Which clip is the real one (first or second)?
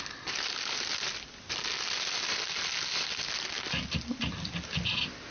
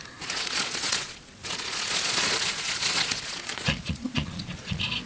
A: first